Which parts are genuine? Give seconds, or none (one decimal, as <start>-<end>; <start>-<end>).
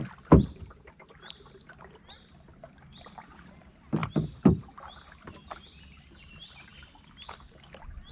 0.0-8.1